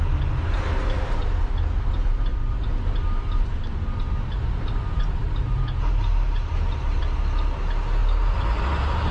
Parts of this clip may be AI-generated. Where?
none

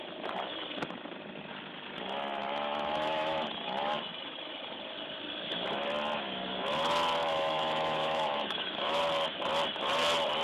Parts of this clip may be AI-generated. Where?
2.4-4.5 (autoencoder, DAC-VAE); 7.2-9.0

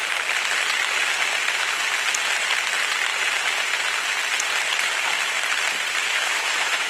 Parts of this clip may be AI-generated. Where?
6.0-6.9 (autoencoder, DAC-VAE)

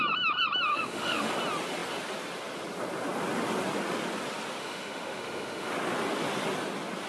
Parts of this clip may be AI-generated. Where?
0.7-1.3 (autoencoder, DAC-VAE); 4.6-5.7